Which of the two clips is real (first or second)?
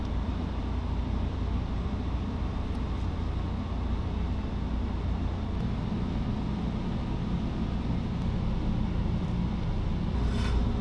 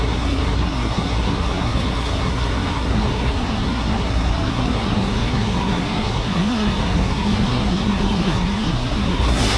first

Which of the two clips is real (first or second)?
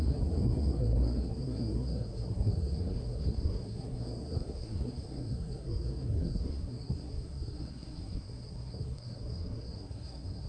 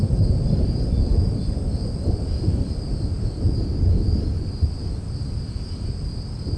second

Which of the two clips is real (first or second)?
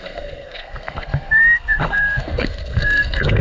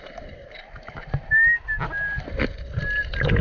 second